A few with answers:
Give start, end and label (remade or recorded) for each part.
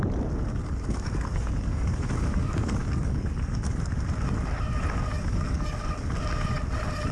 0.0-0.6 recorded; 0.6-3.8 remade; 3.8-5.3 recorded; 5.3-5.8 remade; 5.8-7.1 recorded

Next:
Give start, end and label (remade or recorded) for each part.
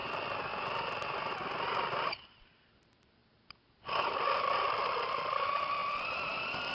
0.0-2.2 recorded; 2.2-3.2 remade; 3.2-4.4 recorded; 4.4-6.7 remade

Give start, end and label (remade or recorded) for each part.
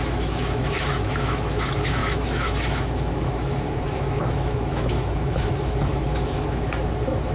0.0-7.3 remade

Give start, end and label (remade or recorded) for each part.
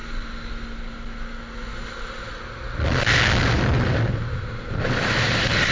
0.0-3.4 recorded; 3.4-5.7 remade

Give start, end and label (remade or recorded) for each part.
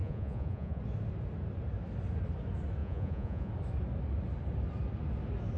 0.0-0.8 remade; 0.8-2.8 recorded; 2.8-3.5 remade; 3.5-5.6 recorded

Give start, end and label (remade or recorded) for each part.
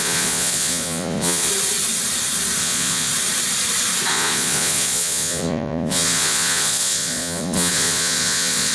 0.0-1.5 remade; 1.5-2.6 recorded; 2.6-3.1 remade; 3.1-4.1 recorded; 4.1-8.7 remade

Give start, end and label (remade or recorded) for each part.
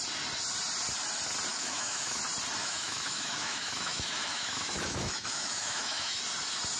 0.0-1.5 recorded; 1.5-2.2 remade; 2.2-2.6 recorded; 2.6-6.2 remade; 6.2-6.8 recorded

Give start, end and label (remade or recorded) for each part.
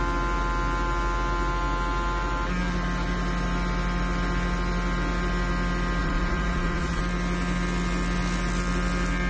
0.0-6.0 recorded; 6.0-7.0 remade; 7.0-9.3 recorded